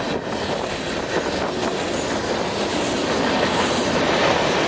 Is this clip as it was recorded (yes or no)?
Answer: yes